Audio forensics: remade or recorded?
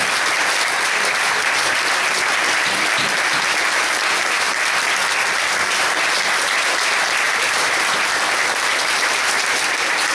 remade